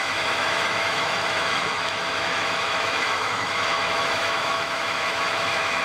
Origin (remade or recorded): remade